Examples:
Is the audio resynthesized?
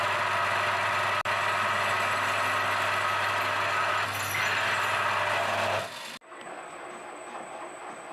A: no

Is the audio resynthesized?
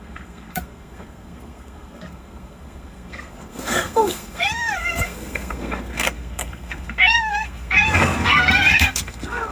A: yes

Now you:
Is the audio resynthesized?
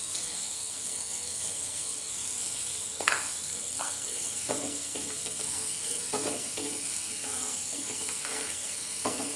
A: yes